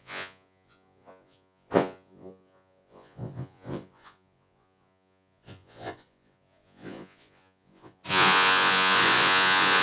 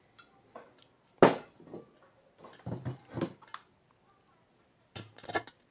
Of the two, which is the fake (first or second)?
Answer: first